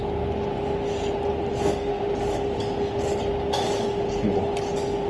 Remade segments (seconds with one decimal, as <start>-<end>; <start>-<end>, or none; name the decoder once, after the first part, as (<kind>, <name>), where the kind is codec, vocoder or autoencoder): 1.5-2.0 (codec, SNAC)